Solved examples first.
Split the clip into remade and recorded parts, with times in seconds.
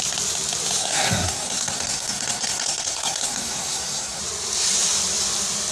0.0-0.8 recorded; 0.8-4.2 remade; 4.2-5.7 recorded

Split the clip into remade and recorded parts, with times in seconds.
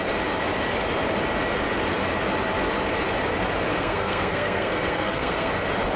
0.0-3.7 recorded; 3.7-5.5 remade; 5.5-6.0 recorded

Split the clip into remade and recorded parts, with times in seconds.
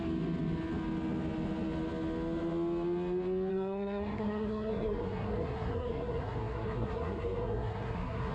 0.0-3.5 recorded; 3.5-8.3 remade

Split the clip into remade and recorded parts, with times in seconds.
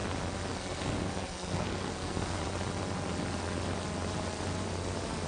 0.0-0.5 recorded; 0.5-2.4 remade; 2.4-5.3 recorded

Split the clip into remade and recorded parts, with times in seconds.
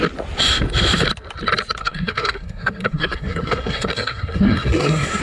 0.0-1.8 recorded; 1.8-5.2 remade